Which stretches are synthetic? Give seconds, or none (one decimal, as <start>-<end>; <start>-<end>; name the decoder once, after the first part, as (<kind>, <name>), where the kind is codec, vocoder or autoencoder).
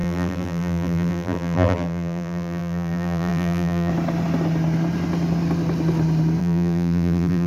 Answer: 0.0-3.9 (vocoder, BigVGAN v2); 6.4-7.5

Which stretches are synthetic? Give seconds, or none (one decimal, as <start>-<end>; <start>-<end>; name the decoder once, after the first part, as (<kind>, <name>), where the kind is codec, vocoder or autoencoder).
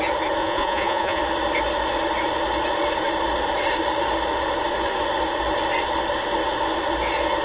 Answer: 0.4-1.2 (vocoder, Vocos)